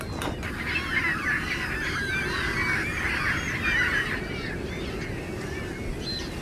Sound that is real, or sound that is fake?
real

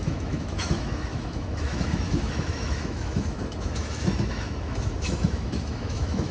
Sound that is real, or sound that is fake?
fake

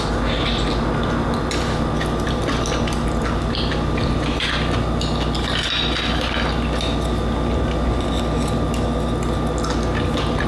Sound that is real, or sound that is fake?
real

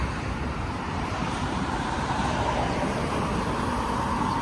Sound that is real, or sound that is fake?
fake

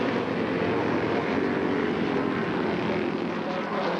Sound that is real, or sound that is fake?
real